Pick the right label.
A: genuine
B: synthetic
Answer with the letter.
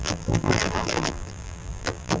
B